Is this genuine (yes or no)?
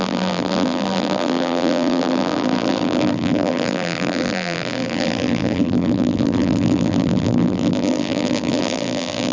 no